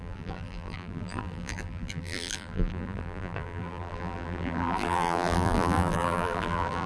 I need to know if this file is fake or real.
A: fake